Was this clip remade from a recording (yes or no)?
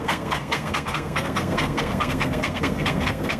yes